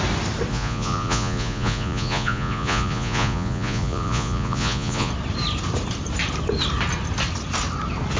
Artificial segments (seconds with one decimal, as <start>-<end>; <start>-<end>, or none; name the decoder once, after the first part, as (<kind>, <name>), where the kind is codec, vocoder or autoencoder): 0.5-5.1 (vocoder, Vocos)